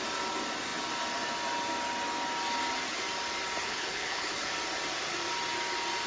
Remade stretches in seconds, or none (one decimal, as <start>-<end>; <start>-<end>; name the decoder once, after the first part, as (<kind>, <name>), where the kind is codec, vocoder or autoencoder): 3.6-4.5 (codec, HILCodec)